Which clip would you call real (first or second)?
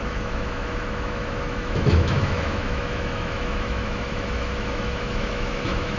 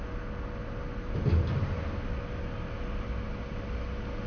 second